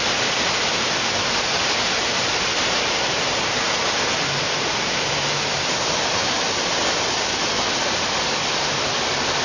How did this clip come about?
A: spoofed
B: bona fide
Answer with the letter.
B